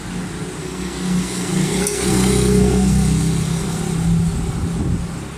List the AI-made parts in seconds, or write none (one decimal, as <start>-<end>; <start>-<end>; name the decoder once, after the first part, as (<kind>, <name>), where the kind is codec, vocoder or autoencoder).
0.6-3.8 (codec, SNAC)